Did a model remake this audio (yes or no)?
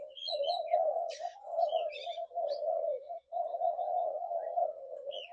yes